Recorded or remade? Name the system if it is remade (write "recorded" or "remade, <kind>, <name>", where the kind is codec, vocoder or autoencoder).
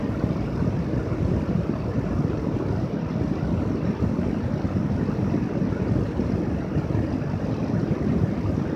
recorded